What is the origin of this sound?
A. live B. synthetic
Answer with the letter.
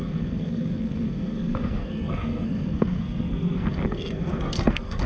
B